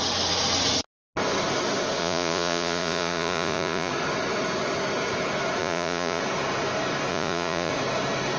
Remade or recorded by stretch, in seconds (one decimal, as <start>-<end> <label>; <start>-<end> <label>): 0.0-2.0 recorded; 2.0-3.9 remade; 3.9-5.6 recorded; 5.6-6.2 remade; 6.2-7.1 recorded; 7.1-7.7 remade; 7.7-8.4 recorded